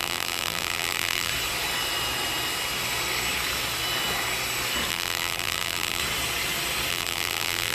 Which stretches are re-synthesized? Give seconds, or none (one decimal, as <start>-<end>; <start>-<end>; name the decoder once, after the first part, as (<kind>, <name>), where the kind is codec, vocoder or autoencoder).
0.0-1.3 (vocoder, BigVGAN v2); 4.9-6.0; 6.9-7.7